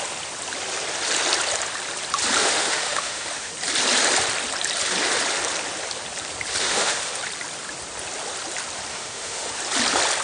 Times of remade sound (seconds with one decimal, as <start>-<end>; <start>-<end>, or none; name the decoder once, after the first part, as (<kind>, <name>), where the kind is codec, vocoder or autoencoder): 2.4-3.5 (autoencoder, DAC-VAE); 6.6-7.2; 8.9-9.5